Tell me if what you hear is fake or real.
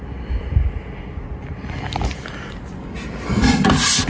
real